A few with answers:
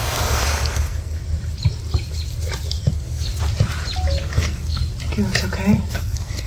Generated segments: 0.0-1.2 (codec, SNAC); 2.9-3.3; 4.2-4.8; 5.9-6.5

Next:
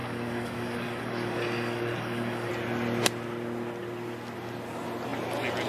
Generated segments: 0.0-2.5 (codec, DAC)

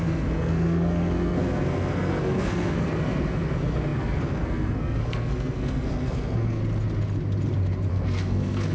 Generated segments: 0.0-6.6 (codec, SNAC); 7.9-8.7